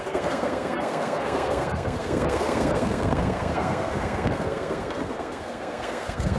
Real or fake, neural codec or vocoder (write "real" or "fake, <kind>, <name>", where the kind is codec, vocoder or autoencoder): fake, codec, SNAC